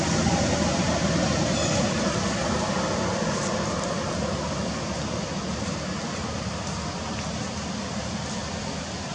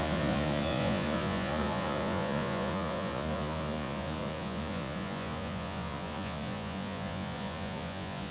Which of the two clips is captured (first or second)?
first